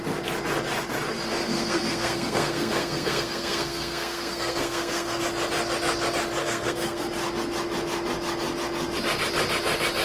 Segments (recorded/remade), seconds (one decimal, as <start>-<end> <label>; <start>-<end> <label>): 0.0-1.4 recorded; 1.4-5.2 remade; 5.2-6.4 recorded; 6.4-7.0 remade; 7.0-10.0 recorded